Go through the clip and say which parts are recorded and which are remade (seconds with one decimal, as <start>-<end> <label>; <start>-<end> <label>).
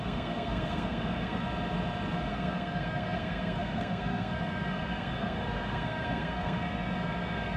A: 0.0-1.4 remade; 1.4-2.3 recorded; 2.3-7.6 remade